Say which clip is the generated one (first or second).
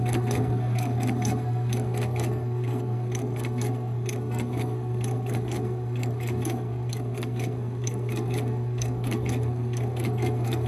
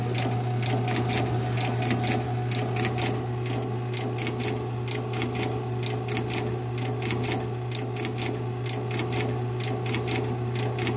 first